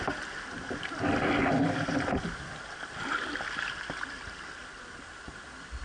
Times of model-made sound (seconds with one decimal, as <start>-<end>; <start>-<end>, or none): none